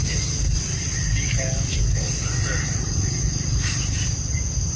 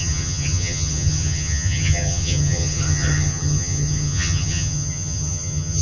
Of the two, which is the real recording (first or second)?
first